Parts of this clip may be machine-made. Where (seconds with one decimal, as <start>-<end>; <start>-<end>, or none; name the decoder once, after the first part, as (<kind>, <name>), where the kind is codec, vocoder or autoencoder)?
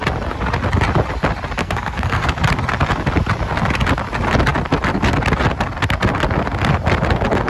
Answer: 1.6-2.3 (codec, SNAC)